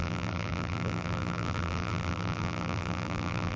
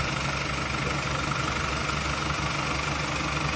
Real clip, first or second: second